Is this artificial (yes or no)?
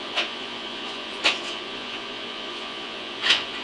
yes